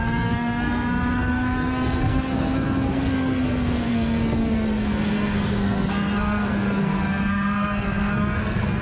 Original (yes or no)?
no